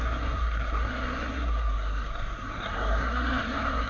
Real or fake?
fake